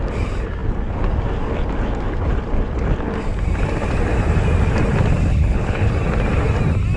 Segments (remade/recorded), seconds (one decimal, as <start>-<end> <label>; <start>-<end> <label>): 0.0-5.3 recorded; 5.3-5.9 remade; 5.9-7.0 recorded